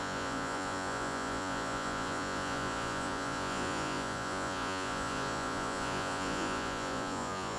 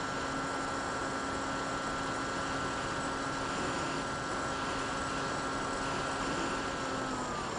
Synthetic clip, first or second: first